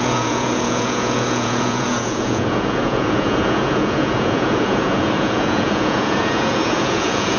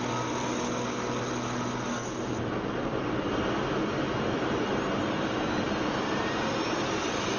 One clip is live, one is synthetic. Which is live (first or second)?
second